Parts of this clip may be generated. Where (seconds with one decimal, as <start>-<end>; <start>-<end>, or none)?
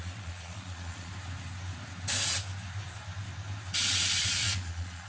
0.0-1.1; 4.2-5.1